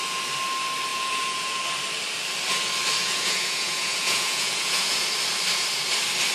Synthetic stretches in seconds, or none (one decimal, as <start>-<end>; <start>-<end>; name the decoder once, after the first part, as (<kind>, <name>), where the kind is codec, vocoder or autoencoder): 0.9-1.6 (vocoder, Vocos); 3.0-5.0